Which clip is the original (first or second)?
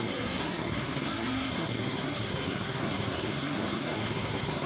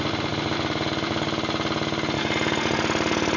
second